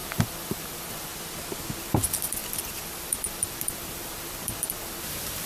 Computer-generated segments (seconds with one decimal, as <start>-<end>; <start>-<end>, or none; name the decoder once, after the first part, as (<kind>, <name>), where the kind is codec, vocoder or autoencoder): 0.0-1.1 (vocoder, BigVGAN v2); 1.8-5.5